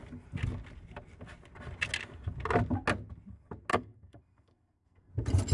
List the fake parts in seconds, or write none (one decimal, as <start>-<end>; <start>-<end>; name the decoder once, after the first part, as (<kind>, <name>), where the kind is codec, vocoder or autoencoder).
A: 3.7-5.1 (codec, SNAC)